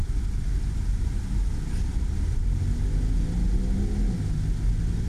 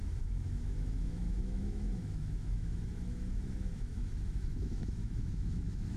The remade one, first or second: second